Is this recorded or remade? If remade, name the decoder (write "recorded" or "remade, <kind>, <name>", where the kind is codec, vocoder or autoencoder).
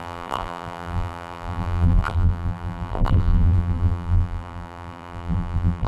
remade, vocoder, BigVGAN v2